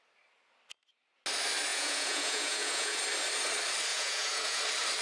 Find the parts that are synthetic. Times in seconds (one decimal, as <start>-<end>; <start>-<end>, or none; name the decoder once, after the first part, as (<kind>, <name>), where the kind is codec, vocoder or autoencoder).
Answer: 1.7-3.0 (vocoder, Vocos); 3.9-4.6